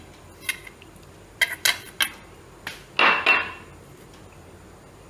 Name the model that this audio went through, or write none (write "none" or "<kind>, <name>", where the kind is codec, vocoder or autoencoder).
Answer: none